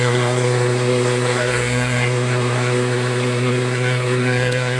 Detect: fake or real fake